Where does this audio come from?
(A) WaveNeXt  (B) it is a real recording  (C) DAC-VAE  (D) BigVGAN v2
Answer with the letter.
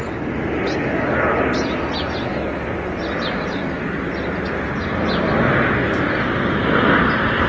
B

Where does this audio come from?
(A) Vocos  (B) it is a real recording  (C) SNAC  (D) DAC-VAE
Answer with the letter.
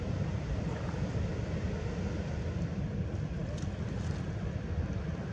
B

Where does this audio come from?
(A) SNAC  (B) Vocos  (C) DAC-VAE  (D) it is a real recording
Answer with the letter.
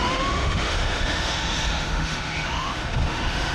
C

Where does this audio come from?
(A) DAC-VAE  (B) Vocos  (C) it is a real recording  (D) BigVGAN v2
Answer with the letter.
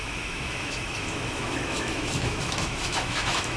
A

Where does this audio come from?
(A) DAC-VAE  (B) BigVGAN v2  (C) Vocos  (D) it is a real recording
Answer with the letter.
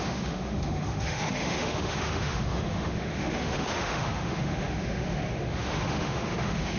A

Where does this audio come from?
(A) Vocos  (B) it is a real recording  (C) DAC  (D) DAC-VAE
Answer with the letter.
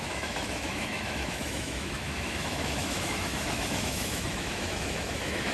D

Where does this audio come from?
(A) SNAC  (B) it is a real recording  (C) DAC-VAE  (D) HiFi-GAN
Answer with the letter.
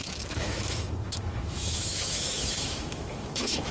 C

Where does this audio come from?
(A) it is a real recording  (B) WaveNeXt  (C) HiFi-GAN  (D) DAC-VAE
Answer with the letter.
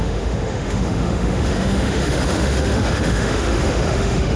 D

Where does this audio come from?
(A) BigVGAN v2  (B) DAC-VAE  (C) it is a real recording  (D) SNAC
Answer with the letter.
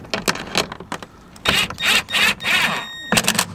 C